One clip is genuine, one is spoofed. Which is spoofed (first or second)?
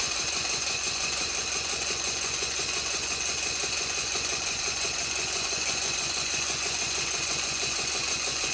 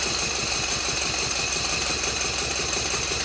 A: first